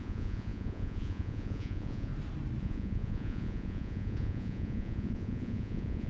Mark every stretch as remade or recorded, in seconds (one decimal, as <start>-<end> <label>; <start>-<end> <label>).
0.0-2.1 remade; 2.1-2.6 recorded; 2.6-6.1 remade